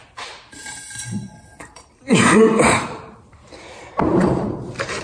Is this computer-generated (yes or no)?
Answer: yes